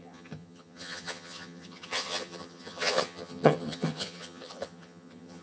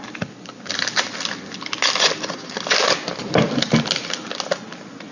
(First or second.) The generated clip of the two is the first